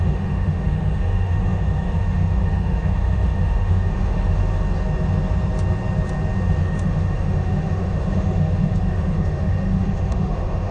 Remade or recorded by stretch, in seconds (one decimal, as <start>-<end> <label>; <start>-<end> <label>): 0.0-4.4 remade; 4.4-6.6 recorded; 6.6-10.7 remade